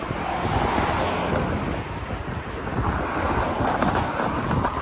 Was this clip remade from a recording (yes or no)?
no